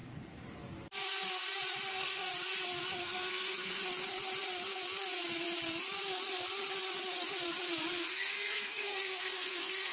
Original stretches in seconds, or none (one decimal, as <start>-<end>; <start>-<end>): 0.0-1.9; 2.3-3.0; 3.8-7.9